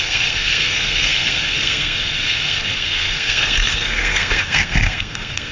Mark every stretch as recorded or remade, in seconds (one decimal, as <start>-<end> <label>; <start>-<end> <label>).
0.0-5.5 remade